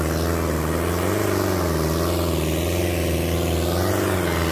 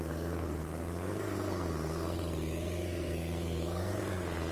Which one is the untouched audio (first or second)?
first